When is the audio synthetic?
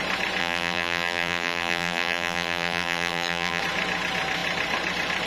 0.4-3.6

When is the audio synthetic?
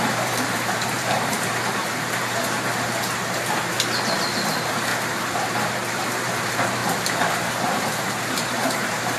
0.0-2.7; 4.5-4.9; 5.9-9.2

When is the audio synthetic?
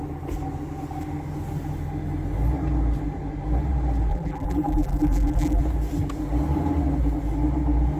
4.1-5.6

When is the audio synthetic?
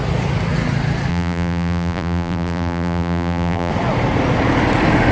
1.1-3.7